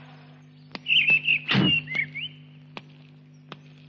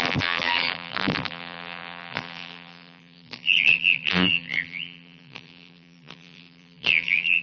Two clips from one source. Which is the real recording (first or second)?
first